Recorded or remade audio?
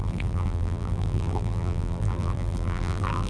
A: remade